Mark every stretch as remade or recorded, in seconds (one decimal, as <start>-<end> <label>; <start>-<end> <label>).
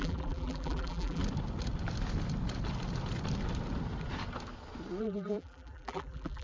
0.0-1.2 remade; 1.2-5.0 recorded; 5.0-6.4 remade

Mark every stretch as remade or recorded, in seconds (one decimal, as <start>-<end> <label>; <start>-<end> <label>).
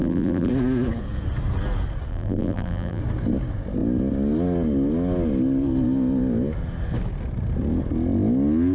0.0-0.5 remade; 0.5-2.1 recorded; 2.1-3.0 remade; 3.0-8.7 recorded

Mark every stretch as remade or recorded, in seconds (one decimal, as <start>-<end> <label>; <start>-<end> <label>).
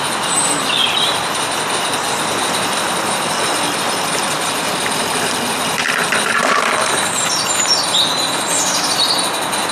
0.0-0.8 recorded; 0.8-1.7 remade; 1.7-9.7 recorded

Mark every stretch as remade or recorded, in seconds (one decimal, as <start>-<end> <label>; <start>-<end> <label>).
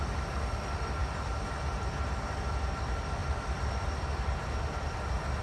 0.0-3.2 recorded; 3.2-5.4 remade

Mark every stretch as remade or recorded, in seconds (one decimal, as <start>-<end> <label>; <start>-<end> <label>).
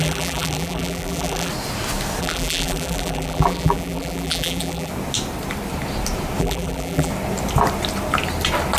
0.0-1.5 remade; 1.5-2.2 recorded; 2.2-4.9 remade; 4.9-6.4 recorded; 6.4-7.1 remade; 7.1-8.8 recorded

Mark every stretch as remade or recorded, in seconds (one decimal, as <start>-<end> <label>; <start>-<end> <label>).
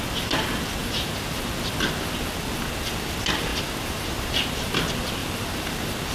0.0-0.8 recorded; 0.8-1.4 remade; 1.4-3.5 recorded; 3.5-4.7 remade; 4.7-5.2 recorded; 5.2-6.1 remade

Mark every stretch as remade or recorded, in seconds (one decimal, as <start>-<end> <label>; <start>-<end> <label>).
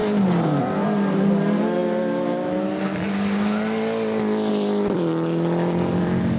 0.0-0.6 recorded; 0.6-1.8 remade; 1.8-4.5 recorded; 4.5-6.4 remade